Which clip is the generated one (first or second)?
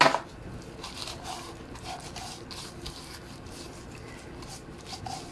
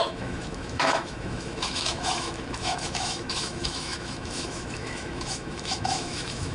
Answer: second